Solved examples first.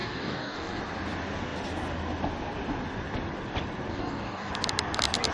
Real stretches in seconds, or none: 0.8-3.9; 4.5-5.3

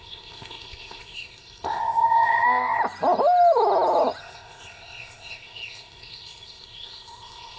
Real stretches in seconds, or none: 2.8-4.2

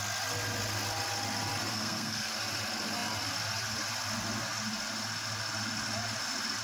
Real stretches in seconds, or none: 0.0-1.7; 2.3-6.6

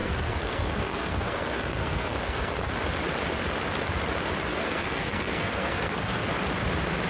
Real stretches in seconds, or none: 2.7-4.5; 6.3-7.1

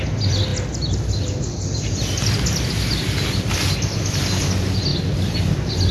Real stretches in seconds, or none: 0.0-5.9